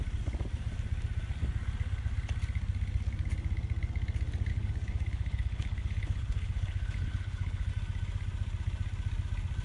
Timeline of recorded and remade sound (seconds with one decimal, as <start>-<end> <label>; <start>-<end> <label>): 0.0-4.5 recorded; 4.5-7.7 remade; 7.7-9.6 recorded